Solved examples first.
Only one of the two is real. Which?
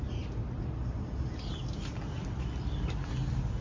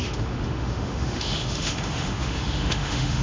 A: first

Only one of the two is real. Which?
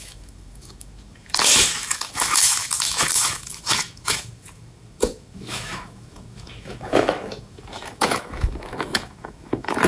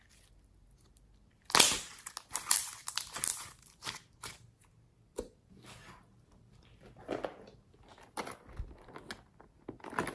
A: second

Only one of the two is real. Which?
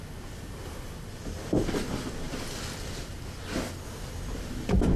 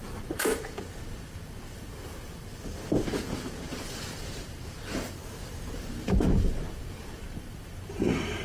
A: first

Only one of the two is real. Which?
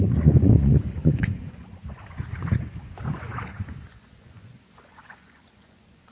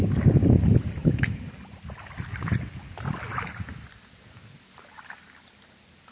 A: second